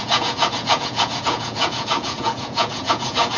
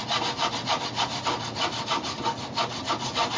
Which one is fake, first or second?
first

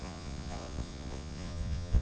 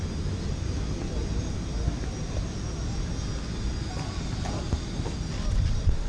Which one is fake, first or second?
first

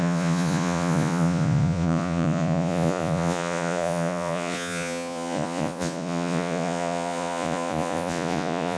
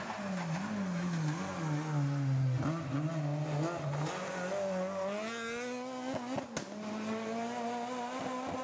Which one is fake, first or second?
first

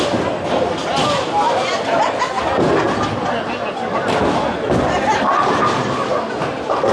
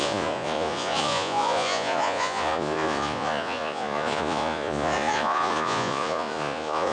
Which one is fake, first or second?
second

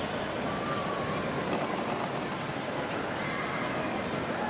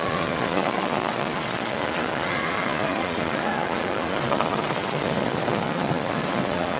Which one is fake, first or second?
second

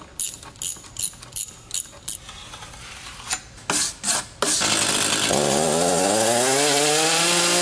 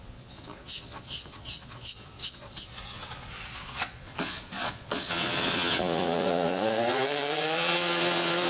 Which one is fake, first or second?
second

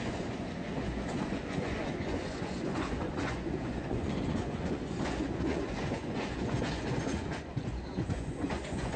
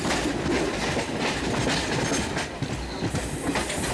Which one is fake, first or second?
first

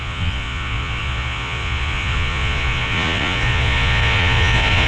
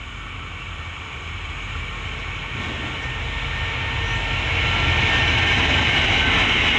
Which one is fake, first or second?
first